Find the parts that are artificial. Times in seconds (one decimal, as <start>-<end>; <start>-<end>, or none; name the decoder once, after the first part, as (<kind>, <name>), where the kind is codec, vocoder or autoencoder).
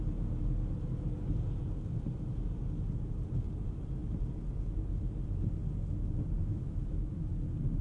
6.4-7.3 (autoencoder, DAC-VAE)